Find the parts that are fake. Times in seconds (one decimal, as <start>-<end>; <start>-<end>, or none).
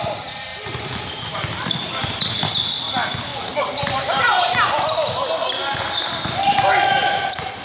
0.5-2.0; 3.3-4.4